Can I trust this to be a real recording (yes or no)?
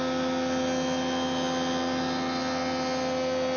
yes